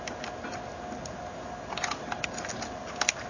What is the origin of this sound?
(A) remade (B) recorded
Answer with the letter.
B